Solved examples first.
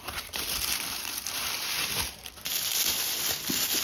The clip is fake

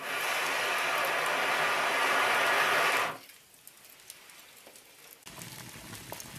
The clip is real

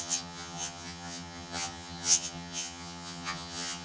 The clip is fake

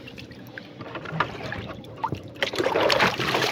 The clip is fake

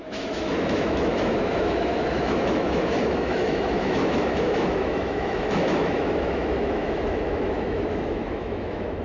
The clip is fake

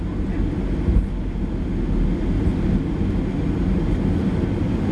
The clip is real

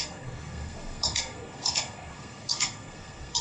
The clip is fake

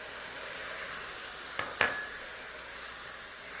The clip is real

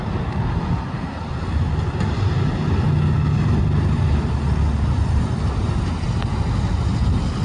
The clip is real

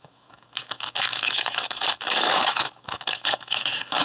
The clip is fake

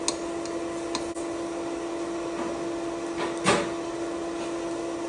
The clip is real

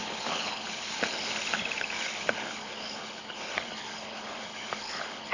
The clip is fake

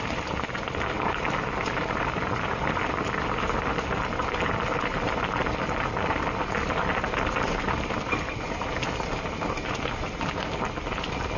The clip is real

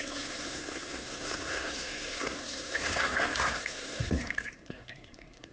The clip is fake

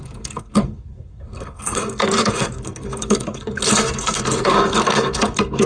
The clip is fake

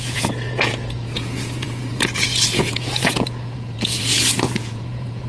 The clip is fake